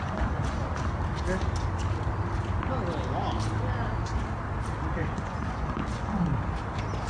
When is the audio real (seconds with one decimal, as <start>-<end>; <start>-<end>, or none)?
0.6-4.9; 6.3-7.1